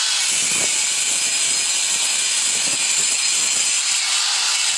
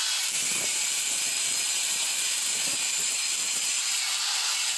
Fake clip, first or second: second